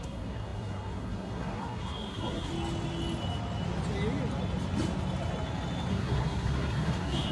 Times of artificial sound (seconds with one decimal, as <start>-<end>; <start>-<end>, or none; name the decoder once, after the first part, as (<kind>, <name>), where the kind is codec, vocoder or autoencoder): 0.0-2.5 (codec, SNAC); 5.9-7.3